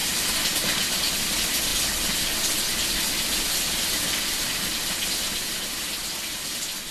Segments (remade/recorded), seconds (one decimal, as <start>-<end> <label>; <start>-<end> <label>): 0.0-6.9 recorded